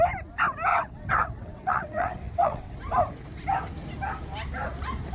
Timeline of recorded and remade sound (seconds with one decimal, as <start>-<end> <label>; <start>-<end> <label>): 0.0-0.7 recorded; 0.7-2.8 remade; 2.8-5.1 recorded